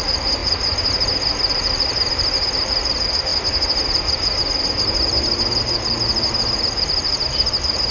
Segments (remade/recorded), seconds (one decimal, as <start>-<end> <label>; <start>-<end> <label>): 0.0-7.9 recorded